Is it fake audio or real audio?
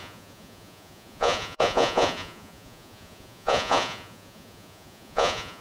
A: fake